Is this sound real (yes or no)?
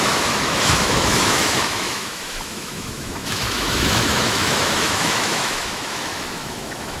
no